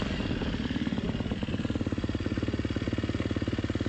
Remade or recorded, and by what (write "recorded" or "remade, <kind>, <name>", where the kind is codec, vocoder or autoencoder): recorded